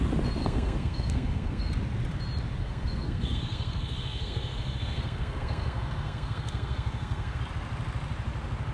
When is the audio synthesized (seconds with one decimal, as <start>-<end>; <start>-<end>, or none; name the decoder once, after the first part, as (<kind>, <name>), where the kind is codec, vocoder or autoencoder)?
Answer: 0.4-1.7 (codec, SNAC); 2.6-7.4